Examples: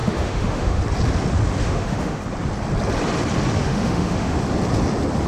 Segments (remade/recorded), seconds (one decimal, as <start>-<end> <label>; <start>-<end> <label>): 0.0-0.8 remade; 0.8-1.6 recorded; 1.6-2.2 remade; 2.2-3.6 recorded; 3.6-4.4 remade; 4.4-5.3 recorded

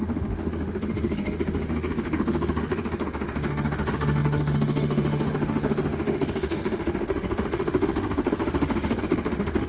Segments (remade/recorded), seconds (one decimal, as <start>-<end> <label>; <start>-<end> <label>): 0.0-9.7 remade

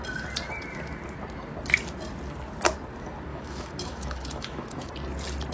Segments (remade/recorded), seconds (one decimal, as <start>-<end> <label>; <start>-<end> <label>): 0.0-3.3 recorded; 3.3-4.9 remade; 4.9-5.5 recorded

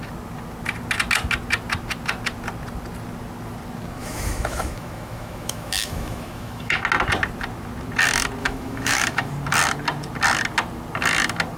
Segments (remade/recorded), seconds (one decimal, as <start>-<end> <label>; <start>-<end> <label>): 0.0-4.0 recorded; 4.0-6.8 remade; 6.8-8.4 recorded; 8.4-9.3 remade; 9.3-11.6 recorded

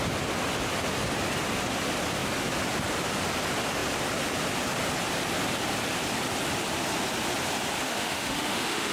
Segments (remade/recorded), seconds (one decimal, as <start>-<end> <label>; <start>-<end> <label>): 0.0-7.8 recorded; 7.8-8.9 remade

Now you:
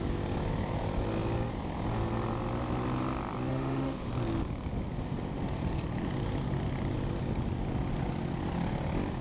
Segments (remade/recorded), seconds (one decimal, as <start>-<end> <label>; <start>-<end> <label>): 0.0-3.5 recorded; 3.5-4.1 remade; 4.1-9.2 recorded